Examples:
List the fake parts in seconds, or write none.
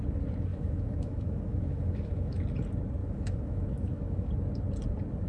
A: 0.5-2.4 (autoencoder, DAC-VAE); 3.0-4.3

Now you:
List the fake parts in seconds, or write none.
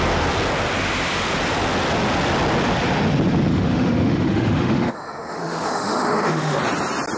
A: 3.5-6.6 (autoencoder, DAC-VAE)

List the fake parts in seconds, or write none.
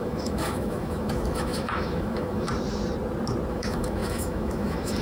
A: 0.0-2.5 (autoencoder, DAC-VAE); 3.5-5.0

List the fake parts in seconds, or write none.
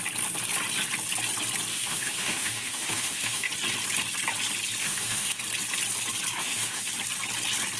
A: 1.7-3.5 (autoencoder, DAC-VAE); 4.8-5.4; 6.4-6.9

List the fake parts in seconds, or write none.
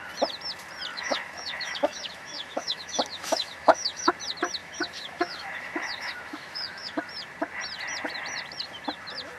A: 0.9-4.1 (autoencoder, DAC-VAE); 4.6-7.0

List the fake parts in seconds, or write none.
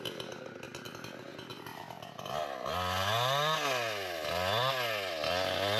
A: none